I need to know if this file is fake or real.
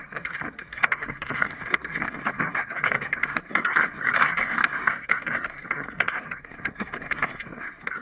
fake